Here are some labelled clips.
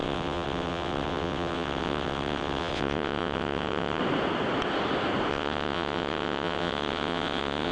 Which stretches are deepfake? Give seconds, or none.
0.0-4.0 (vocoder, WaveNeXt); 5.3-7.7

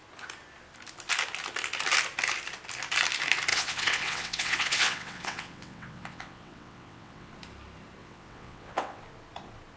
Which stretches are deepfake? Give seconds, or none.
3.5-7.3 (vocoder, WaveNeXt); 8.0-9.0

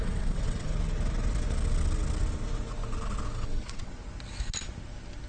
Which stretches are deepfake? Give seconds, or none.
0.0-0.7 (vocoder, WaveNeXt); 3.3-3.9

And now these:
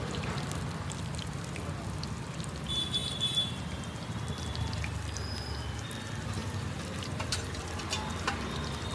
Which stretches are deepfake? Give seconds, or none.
none

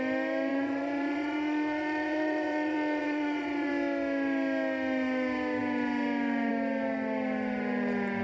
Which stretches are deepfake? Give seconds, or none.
0.5-3.7 (vocoder, WaveNeXt)